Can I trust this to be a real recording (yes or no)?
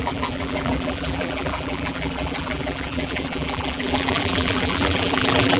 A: no